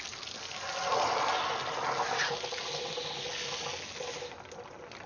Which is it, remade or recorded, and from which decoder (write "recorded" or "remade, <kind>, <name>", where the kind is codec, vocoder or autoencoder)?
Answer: recorded